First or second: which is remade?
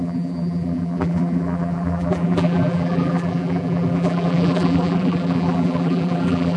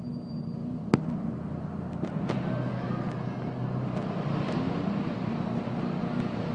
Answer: first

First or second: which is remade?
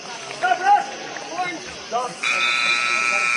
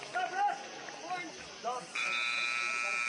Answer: first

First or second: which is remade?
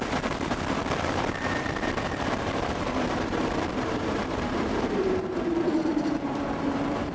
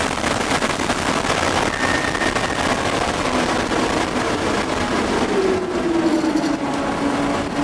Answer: first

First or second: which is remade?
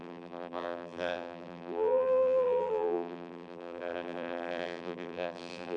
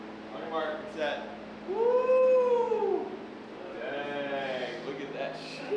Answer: first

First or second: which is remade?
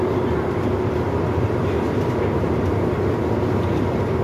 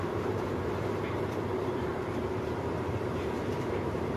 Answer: second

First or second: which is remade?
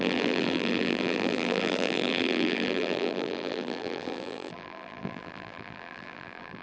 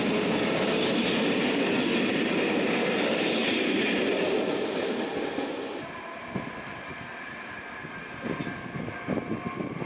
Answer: first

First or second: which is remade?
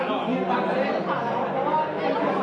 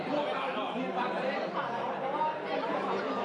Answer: second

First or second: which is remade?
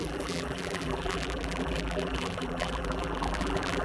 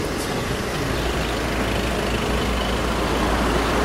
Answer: first